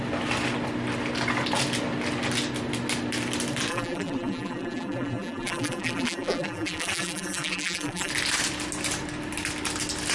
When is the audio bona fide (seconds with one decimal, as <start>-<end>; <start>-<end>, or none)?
0.0-3.7; 8.1-10.1